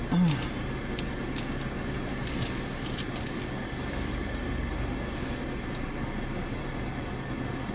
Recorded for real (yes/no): yes